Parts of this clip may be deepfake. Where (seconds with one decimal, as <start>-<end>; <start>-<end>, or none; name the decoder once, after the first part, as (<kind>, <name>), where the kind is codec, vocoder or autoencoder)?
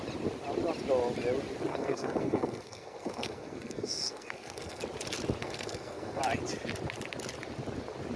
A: 1.7-4.8 (codec, SNAC); 5.4-6.2